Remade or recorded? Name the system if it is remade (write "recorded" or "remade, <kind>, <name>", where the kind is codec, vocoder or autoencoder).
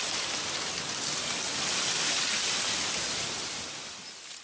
recorded